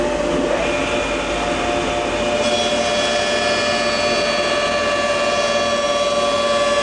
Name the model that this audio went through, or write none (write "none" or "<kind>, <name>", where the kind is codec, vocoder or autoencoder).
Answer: none